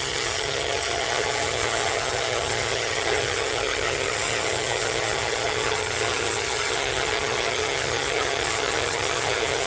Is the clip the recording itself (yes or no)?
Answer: no